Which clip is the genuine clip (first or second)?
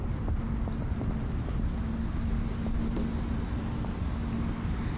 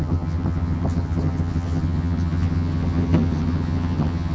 first